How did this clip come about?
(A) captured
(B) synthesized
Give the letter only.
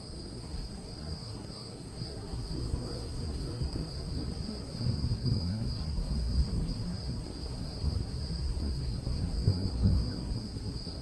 B